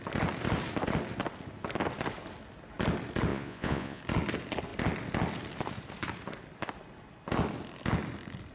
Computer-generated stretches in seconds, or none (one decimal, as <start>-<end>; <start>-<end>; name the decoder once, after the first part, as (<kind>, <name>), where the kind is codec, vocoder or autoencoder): 3.3-4.0 (vocoder, Vocos)